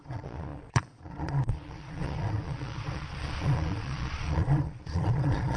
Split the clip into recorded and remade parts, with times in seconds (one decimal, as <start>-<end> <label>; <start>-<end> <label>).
0.0-5.6 remade